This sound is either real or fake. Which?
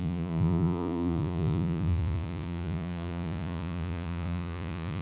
fake